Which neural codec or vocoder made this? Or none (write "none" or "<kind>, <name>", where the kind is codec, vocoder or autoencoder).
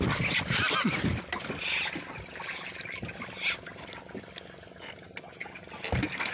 none